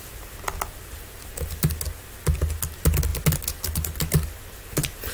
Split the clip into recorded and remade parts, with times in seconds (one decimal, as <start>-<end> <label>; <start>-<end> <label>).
0.0-5.1 recorded